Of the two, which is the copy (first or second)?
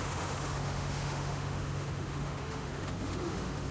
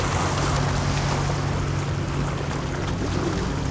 first